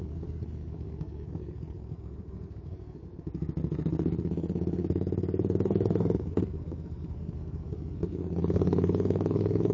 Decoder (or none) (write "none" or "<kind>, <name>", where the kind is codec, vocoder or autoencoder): codec, SNAC